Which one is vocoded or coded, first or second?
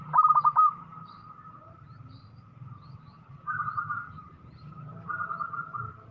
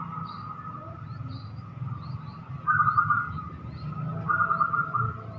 first